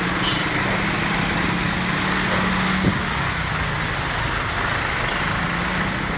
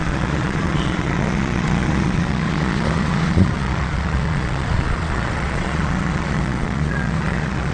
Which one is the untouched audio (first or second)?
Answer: first